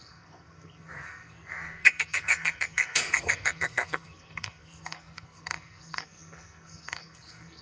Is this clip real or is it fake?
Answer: fake